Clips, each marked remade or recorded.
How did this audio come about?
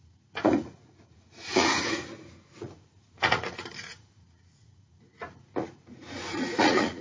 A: remade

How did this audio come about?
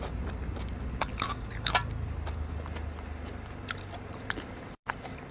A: recorded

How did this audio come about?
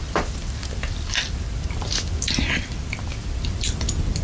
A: recorded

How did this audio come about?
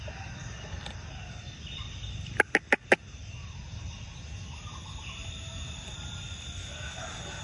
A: recorded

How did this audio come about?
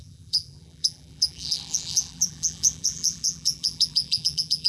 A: remade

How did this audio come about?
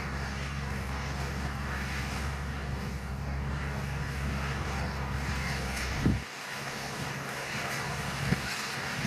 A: remade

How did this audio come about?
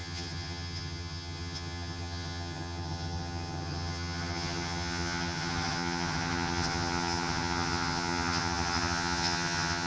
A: remade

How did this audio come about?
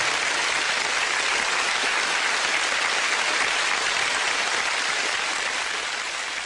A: recorded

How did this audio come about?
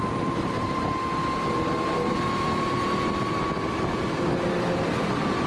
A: recorded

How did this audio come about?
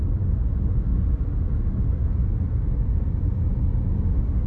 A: recorded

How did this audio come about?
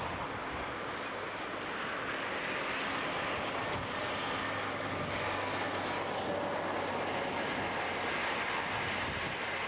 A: recorded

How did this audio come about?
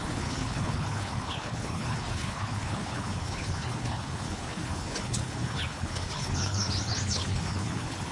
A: remade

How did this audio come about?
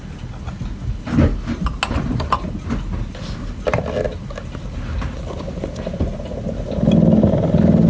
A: recorded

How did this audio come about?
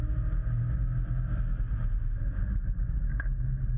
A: recorded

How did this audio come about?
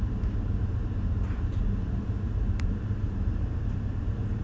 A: remade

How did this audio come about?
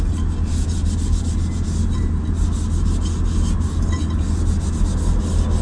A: recorded